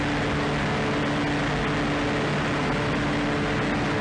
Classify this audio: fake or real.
real